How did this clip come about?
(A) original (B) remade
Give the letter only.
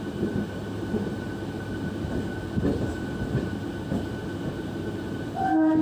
B